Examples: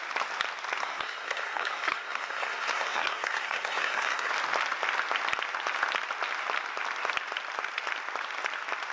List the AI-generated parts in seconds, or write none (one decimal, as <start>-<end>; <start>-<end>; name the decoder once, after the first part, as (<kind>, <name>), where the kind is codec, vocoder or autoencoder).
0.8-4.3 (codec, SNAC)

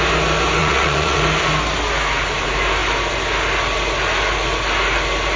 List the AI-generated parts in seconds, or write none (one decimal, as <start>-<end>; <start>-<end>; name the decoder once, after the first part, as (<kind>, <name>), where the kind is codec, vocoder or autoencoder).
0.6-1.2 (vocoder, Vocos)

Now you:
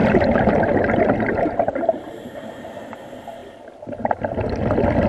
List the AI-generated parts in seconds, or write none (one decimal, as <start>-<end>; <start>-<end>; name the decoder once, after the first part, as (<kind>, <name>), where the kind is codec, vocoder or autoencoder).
0.0-2.7 (vocoder, BigVGAN v2)

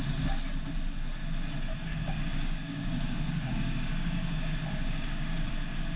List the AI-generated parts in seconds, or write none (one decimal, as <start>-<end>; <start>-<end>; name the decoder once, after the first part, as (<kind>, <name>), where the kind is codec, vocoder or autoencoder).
1.9-5.5 (codec, DAC)

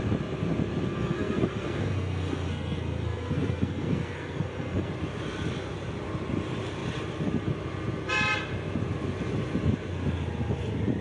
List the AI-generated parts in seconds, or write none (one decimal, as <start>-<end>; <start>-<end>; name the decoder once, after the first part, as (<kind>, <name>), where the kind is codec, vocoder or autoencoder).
0.9-4.9 (codec, SNAC)

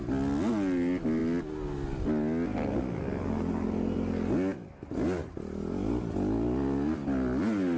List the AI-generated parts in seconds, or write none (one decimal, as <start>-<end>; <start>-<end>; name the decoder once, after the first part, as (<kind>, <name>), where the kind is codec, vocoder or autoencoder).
none

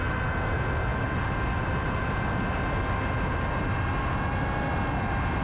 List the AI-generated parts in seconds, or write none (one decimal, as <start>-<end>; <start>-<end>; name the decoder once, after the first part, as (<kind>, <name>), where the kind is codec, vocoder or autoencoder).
none